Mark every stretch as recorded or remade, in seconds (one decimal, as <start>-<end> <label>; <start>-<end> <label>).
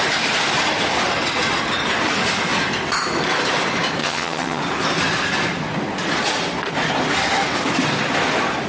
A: 0.0-4.0 recorded; 4.0-4.6 remade; 4.6-8.7 recorded